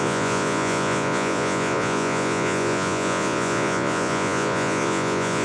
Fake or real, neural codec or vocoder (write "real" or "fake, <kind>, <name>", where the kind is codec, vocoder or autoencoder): fake, vocoder, Vocos